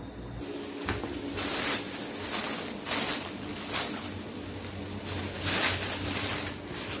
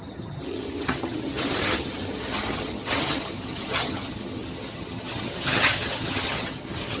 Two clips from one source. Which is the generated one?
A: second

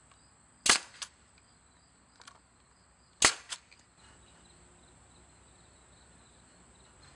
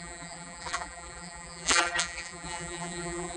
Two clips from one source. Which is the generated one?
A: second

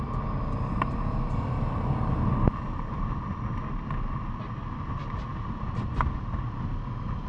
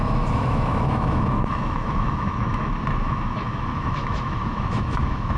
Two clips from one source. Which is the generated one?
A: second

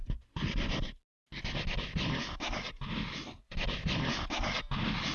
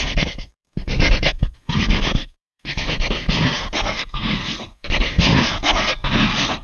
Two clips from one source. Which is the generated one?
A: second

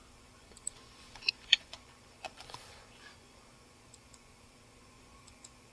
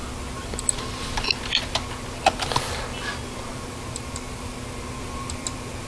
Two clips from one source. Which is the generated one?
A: first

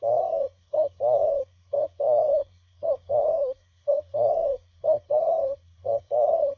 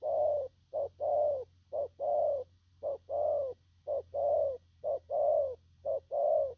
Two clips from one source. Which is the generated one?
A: first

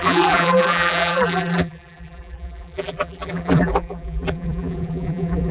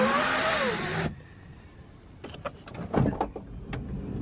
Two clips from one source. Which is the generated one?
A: first